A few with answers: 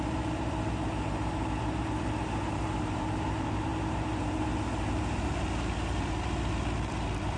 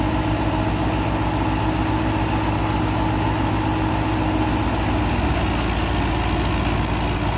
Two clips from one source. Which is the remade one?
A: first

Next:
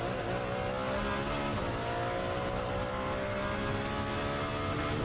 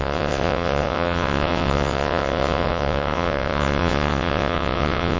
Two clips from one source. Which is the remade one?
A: second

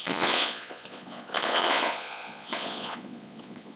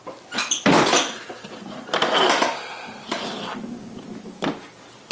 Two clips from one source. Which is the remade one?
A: first